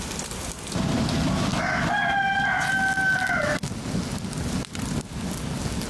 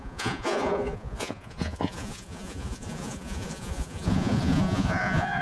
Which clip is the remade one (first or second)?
second